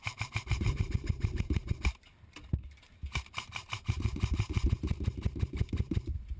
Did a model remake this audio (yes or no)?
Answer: yes